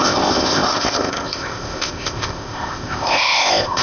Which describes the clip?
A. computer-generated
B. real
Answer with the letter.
A